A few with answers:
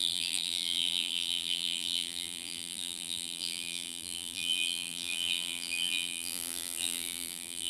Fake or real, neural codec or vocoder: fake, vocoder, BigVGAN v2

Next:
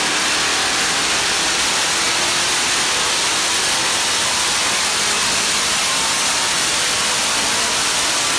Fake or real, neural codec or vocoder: real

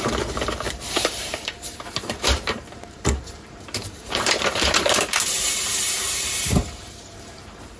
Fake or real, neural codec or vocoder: fake, vocoder, BigVGAN v2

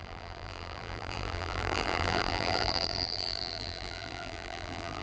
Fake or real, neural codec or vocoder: fake, vocoder, BigVGAN v2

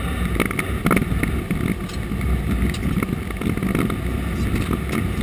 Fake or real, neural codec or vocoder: real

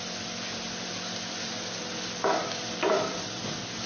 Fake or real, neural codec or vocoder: fake, vocoder, BigVGAN v2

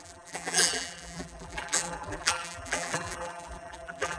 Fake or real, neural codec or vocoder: fake, vocoder, BigVGAN v2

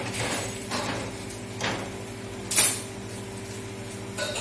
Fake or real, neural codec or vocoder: real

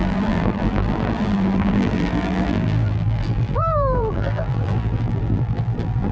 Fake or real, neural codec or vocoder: fake, vocoder, BigVGAN v2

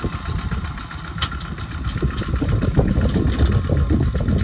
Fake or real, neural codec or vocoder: real